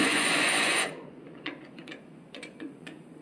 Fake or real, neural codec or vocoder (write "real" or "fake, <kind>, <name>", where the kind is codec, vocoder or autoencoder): fake, vocoder, Vocos